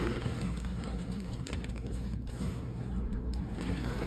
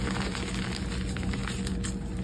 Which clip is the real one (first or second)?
second